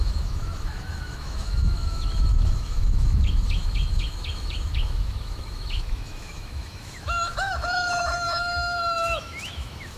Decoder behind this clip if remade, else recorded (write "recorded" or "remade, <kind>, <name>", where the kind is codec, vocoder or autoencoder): remade, autoencoder, DAC-VAE